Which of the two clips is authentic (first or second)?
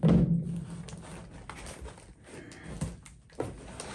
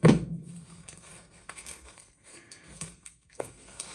first